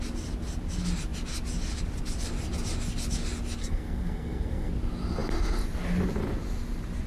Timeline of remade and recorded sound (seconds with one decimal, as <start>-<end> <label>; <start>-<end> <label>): 0.0-3.6 recorded; 3.6-4.7 remade; 4.7-7.1 recorded